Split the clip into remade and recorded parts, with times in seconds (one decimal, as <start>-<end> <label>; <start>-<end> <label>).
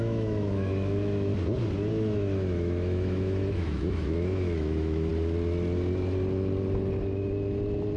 0.0-1.3 remade; 1.3-1.9 recorded; 1.9-5.1 remade; 5.1-8.0 recorded